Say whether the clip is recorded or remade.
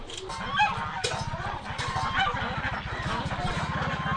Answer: recorded